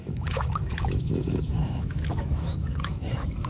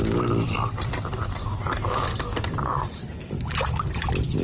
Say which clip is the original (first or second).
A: second